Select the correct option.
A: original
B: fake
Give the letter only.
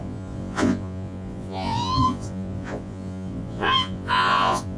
B